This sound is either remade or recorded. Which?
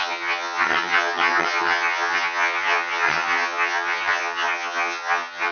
remade